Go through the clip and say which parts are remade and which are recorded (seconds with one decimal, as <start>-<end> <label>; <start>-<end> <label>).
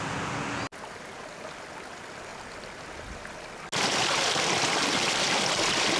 0.0-6.0 recorded